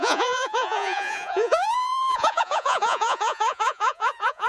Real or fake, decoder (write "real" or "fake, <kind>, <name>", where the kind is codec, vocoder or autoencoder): fake, vocoder, Vocos